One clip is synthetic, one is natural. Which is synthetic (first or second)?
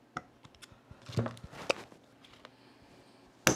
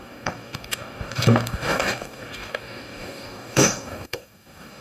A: second